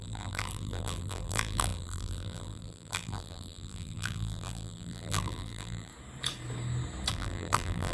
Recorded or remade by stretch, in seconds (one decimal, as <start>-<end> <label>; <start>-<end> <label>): 0.0-5.9 remade; 5.9-7.1 recorded; 7.1-7.9 remade